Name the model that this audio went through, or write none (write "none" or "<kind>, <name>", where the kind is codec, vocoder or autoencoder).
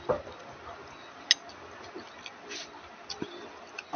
none